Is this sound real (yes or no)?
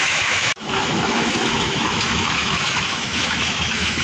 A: no